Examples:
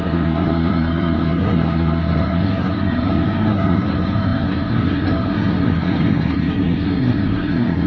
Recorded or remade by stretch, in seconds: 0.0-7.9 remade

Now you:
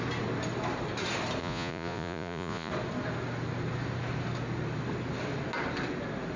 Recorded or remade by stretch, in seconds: 0.0-1.4 recorded; 1.4-2.7 remade; 2.7-6.4 recorded

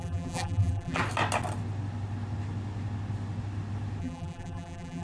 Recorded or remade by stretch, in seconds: 0.0-1.0 remade; 1.0-4.0 recorded; 4.0-5.0 remade

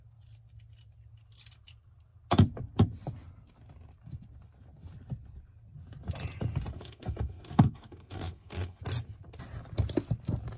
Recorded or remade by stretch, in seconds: 0.0-6.7 recorded; 6.7-8.8 remade; 8.8-10.6 recorded

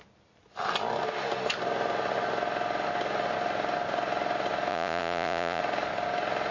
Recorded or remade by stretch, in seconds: 0.0-4.7 recorded; 4.7-5.6 remade; 5.6-6.5 recorded

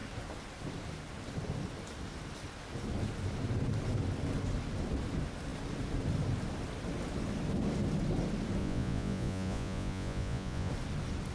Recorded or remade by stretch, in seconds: 0.0-8.6 recorded; 8.6-10.7 remade; 10.7-11.3 recorded